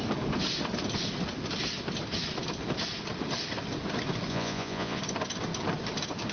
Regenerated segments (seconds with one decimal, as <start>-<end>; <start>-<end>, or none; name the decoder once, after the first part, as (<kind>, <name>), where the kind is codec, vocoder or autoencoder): 4.3-5.0 (vocoder, Vocos)